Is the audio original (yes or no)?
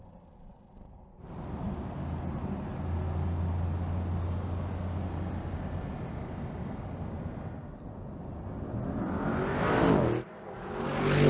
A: yes